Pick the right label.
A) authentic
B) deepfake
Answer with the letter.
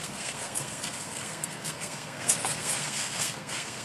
B